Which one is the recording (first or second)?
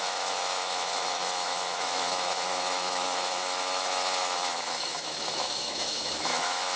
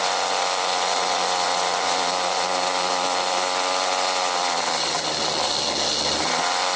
second